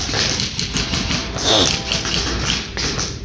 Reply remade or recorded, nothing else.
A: recorded